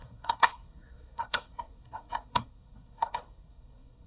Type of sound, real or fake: fake